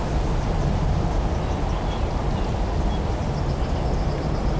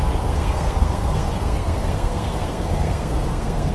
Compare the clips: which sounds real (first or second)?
first